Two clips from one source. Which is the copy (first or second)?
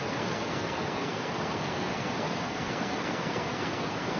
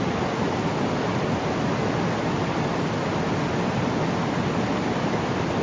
first